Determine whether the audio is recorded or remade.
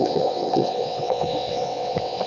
remade